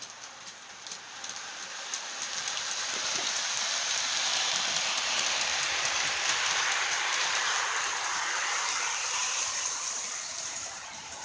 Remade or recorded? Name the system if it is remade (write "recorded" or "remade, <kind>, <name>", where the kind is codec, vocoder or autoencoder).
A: remade, vocoder, BigVGAN v2